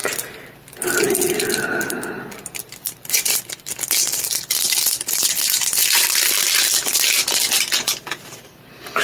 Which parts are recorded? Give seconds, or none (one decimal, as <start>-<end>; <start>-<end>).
0.0-2.6; 6.6-9.0